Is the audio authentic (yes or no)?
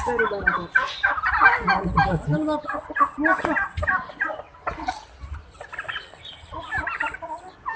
yes